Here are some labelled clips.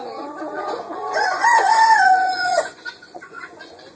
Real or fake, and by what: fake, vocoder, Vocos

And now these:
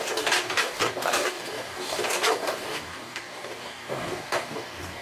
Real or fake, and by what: fake, codec, DAC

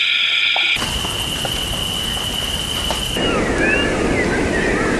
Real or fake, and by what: real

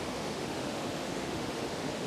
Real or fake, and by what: fake, autoencoder, DAC-VAE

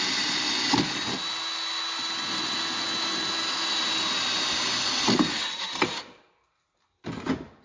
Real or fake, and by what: real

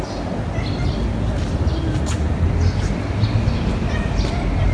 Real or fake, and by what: real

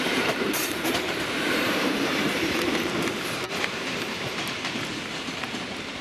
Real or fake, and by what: fake, vocoder, BigVGAN v2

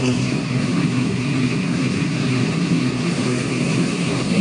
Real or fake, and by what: fake, codec, SNAC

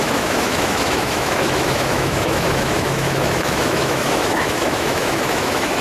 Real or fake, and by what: fake, autoencoder, DAC-VAE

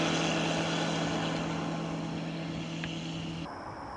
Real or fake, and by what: real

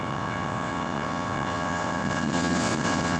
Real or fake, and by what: fake, vocoder, WaveNeXt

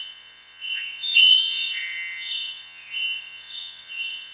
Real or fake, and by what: fake, vocoder, WaveNeXt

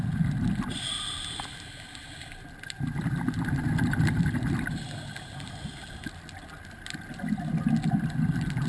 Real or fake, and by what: real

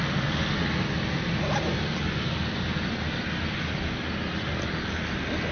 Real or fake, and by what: real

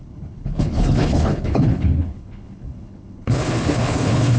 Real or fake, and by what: fake, codec, HILCodec